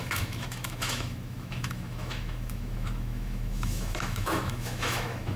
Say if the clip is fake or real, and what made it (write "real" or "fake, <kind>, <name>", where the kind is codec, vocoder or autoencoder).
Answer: fake, autoencoder, DAC-VAE